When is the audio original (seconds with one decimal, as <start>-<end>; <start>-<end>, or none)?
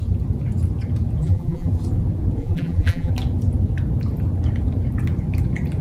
0.0-1.2; 1.7-2.4; 3.1-5.8